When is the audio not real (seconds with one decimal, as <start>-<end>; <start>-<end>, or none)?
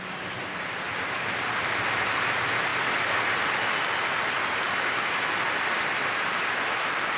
0.9-1.4